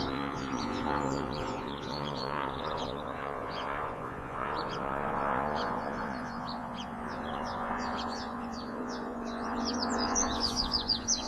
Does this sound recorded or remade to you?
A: remade